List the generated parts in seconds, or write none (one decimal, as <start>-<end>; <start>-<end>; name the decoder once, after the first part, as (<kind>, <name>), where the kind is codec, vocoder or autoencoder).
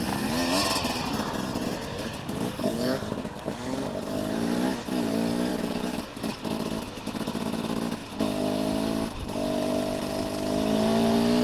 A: 1.9-3.5 (codec, DAC); 5.5-6.3